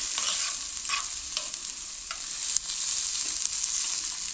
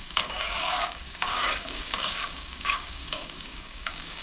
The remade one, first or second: second